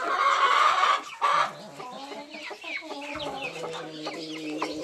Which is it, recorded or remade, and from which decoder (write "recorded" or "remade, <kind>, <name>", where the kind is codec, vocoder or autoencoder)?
recorded